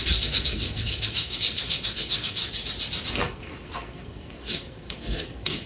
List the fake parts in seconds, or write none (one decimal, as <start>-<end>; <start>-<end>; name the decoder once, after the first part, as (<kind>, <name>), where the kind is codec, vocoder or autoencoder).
0.0-2.4 (codec, SNAC); 3.1-5.7